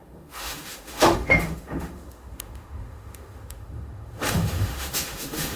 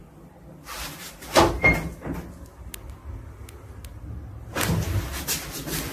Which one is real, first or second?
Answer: second